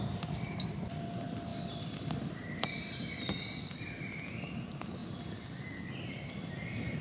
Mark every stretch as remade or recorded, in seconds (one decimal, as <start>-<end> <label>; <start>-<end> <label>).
0.0-5.0 remade; 5.0-5.7 recorded; 5.7-7.0 remade